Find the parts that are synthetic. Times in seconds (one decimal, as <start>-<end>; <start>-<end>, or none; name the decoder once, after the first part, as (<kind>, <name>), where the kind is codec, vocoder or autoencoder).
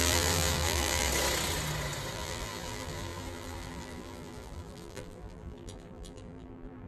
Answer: 0.0-1.1 (vocoder, BigVGAN v2); 2.1-6.9